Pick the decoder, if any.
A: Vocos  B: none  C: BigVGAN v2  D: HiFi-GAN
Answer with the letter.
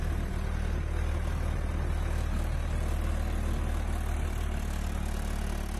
B